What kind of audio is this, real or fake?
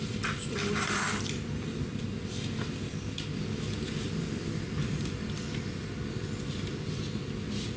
real